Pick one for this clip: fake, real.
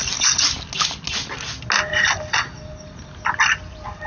real